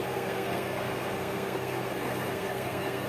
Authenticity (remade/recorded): remade